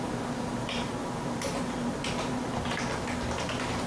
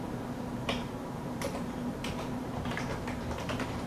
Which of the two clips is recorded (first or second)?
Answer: first